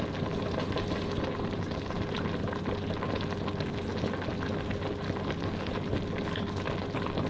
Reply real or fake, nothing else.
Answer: real